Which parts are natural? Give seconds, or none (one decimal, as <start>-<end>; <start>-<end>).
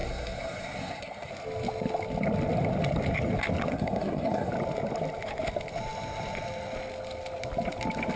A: 1.3-3.7; 4.5-8.2